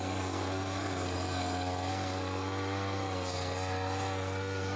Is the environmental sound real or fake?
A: fake